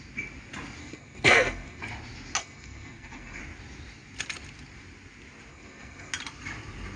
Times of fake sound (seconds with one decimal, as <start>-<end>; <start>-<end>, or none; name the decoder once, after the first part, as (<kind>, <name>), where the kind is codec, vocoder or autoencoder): 0.8-1.8 (codec, SNAC); 2.4-3.4; 5.5-6.1